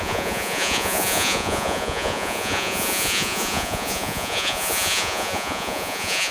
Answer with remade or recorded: remade